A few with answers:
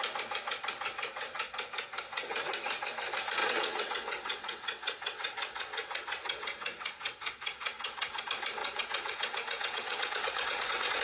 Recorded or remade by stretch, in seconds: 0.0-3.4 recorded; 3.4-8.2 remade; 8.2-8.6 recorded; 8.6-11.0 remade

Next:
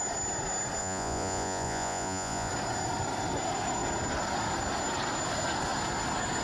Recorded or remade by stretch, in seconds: 0.0-0.8 recorded; 0.8-2.5 remade; 2.5-6.4 recorded